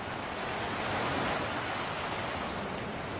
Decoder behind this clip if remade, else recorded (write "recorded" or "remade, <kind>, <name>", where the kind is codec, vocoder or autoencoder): recorded